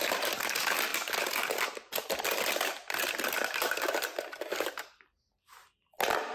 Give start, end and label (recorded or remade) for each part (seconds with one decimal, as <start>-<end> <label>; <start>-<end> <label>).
0.0-6.3 recorded